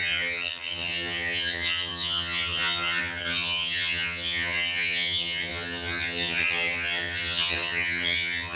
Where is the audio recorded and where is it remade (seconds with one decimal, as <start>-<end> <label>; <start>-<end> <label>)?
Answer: 0.0-8.6 remade

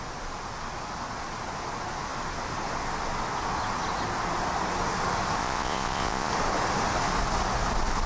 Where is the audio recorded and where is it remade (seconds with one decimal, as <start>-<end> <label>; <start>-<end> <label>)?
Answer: 0.0-5.4 recorded; 5.4-6.3 remade; 6.3-8.1 recorded

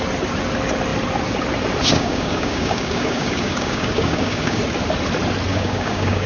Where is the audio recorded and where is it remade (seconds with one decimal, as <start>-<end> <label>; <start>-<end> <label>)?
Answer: 0.0-1.9 recorded; 1.9-4.6 remade; 4.6-5.5 recorded; 5.5-6.3 remade